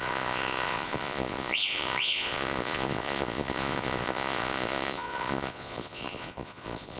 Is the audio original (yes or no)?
no